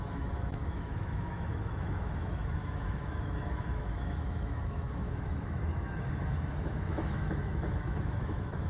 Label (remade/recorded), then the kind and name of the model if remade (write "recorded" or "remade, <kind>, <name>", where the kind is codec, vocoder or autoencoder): remade, autoencoder, DAC-VAE